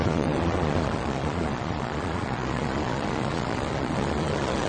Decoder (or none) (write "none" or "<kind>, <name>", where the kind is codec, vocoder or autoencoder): vocoder, Vocos